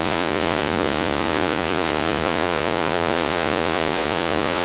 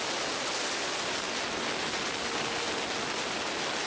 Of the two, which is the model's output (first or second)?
first